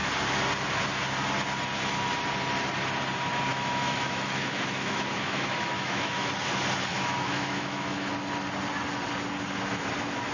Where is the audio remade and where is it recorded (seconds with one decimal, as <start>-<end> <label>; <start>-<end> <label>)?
0.0-3.5 recorded; 3.5-6.3 remade; 6.3-6.9 recorded; 6.9-8.1 remade; 8.1-10.3 recorded